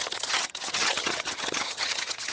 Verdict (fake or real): fake